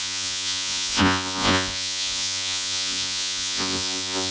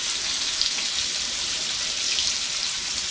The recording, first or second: second